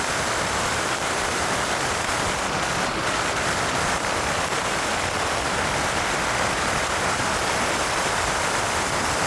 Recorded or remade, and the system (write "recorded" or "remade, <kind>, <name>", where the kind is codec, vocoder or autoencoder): remade, vocoder, BigVGAN v2